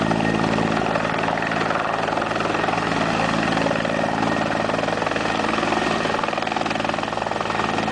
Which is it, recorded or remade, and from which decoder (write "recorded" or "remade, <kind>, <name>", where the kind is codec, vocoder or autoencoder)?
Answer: recorded